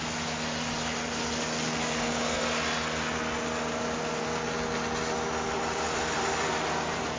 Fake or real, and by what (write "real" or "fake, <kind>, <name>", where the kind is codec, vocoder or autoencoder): real